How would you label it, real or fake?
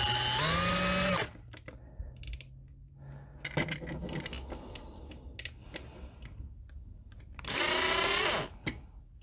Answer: real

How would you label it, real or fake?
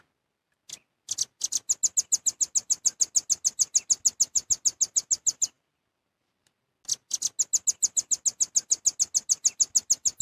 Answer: real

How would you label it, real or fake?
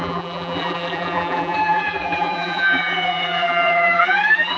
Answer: fake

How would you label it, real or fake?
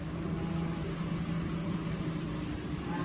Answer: real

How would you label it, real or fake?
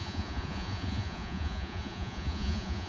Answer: fake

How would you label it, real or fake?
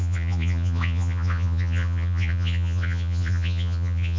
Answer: fake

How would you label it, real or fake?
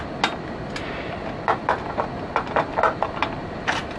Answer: real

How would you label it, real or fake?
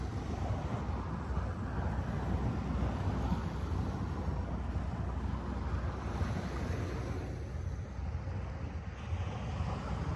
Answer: real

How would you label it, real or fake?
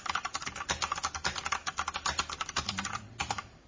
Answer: real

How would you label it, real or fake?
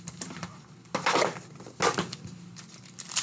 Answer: real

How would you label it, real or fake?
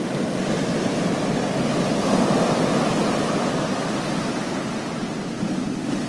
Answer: fake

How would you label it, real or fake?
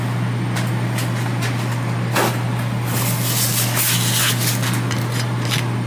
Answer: real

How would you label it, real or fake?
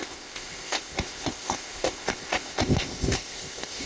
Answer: fake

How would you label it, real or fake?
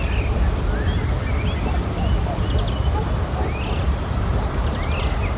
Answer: real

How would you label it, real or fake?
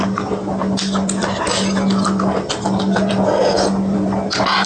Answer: real